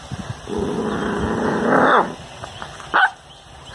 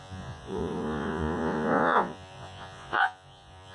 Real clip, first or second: first